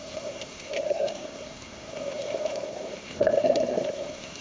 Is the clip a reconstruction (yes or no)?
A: yes